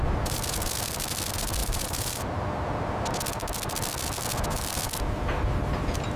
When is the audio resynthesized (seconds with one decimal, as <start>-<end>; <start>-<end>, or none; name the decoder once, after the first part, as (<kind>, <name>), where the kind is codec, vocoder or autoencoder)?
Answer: 1.6-2.4 (vocoder, BigVGAN v2)